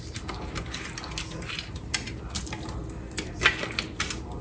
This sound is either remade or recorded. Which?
recorded